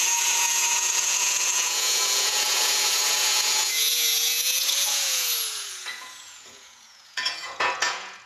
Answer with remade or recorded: remade